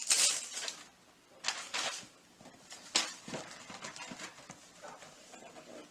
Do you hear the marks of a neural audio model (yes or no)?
no